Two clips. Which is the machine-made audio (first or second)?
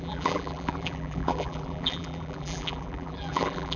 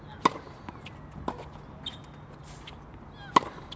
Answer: first